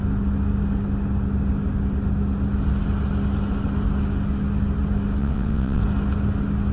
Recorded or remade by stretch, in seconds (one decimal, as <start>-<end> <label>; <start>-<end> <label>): 0.0-5.2 recorded; 5.2-5.8 remade; 5.8-6.7 recorded